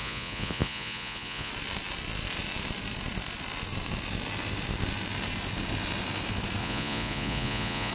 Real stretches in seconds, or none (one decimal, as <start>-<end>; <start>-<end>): 1.5-6.6